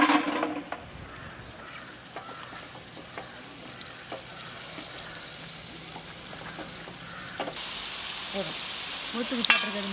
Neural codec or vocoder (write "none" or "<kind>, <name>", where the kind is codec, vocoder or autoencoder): none